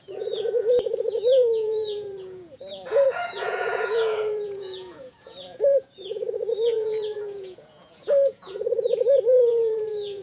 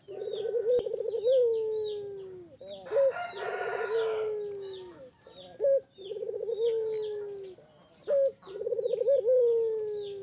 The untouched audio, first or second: second